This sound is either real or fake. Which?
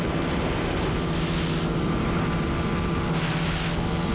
real